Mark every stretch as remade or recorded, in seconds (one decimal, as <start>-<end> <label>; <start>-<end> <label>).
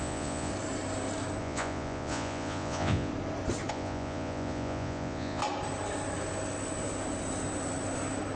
0.0-0.5 remade; 0.5-1.4 recorded; 1.4-3.1 remade; 3.1-3.7 recorded; 3.7-5.4 remade; 5.4-8.4 recorded